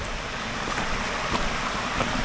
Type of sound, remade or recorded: recorded